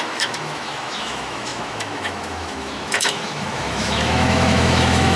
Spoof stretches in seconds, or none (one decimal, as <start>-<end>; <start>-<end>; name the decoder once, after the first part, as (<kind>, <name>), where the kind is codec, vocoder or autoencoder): 0.0-5.2 (autoencoder, DAC-VAE)